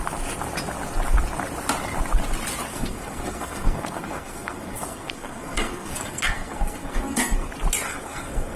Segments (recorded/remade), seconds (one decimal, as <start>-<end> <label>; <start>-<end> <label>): 0.0-2.7 recorded; 2.7-7.5 remade; 7.5-7.9 recorded; 7.9-8.6 remade